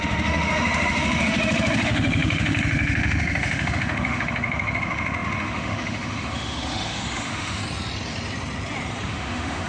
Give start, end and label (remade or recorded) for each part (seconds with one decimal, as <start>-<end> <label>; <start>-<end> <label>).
0.0-7.6 remade; 7.6-9.1 recorded; 9.1-9.7 remade